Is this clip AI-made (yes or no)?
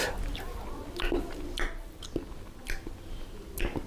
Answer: no